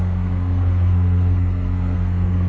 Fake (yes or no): yes